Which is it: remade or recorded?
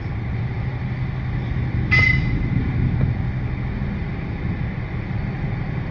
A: recorded